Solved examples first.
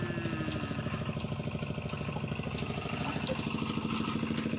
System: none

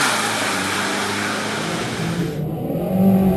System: none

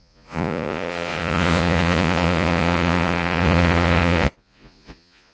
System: vocoder, Vocos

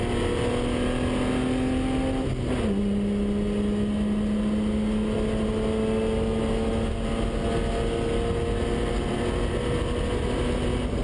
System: none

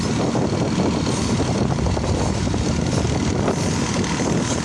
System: none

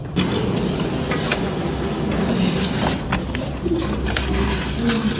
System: none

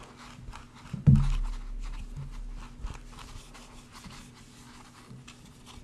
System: none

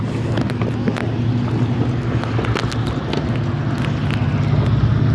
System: none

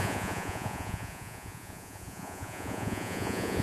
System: vocoder, Vocos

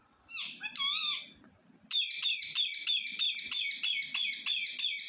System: none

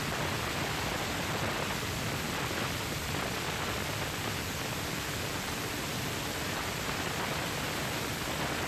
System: none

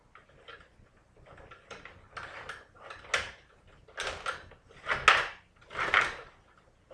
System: none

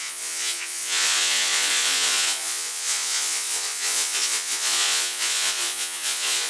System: vocoder, Vocos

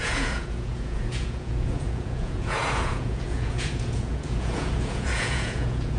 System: vocoder, Vocos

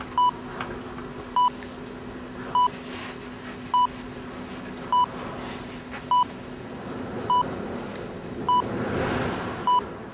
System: none